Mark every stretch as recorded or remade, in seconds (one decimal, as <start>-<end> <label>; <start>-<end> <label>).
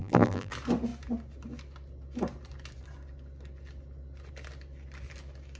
0.0-0.5 remade; 0.5-5.6 recorded